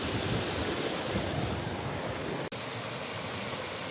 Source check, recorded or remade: recorded